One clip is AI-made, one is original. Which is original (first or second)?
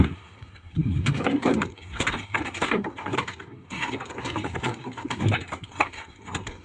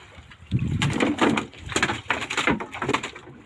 second